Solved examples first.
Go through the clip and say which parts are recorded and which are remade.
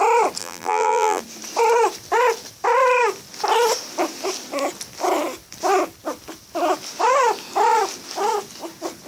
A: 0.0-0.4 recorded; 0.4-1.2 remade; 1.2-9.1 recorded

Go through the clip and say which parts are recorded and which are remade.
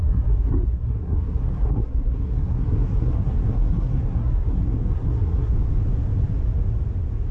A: 0.0-5.5 remade; 5.5-7.3 recorded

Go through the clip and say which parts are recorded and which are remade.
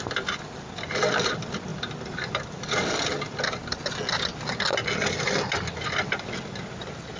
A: 0.0-7.2 recorded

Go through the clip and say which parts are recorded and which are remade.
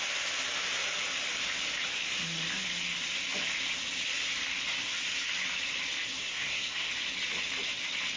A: 0.0-6.2 recorded; 6.2-6.9 remade; 6.9-8.2 recorded